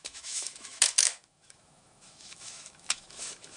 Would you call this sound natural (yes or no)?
no